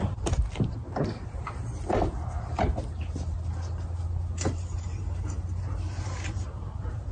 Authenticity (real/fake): real